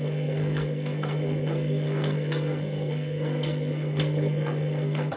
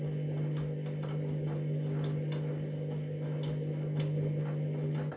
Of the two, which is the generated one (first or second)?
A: first